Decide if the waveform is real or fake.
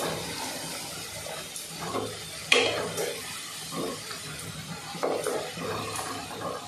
real